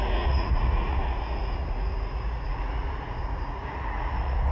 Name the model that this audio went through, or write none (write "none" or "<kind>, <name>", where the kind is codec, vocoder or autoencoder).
vocoder, Vocos